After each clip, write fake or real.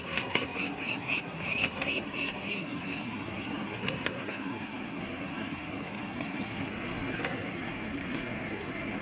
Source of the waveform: fake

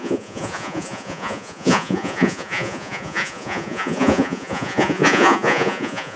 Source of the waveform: fake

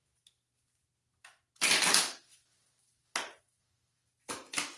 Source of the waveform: real